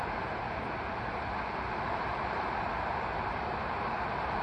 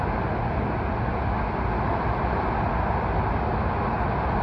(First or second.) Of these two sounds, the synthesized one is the first